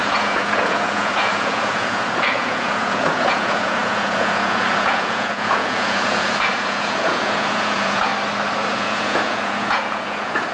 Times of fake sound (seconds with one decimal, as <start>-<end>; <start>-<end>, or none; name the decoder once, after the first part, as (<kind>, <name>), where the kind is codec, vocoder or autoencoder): 0.0-8.1 (vocoder, Vocos); 8.7-10.5

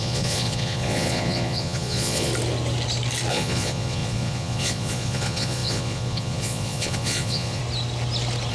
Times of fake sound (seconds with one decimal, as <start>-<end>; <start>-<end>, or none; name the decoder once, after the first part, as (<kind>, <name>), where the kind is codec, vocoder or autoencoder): 0.0-2.3 (vocoder, Vocos); 3.3-7.6